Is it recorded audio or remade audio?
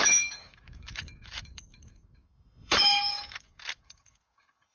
remade